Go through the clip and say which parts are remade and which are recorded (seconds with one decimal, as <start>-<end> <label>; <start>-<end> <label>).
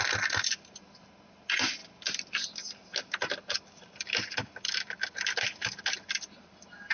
0.0-6.9 recorded